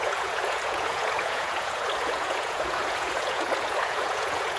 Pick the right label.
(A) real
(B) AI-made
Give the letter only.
B